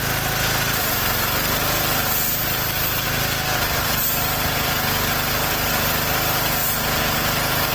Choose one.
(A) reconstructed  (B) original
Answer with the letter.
B